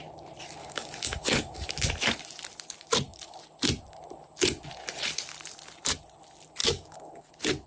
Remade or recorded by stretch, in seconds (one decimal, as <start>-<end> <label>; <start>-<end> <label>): 0.0-0.6 recorded; 0.6-1.7 remade; 1.7-6.6 recorded; 6.6-7.3 remade; 7.3-7.7 recorded